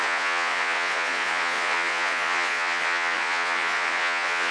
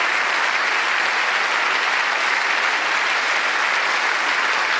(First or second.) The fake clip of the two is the first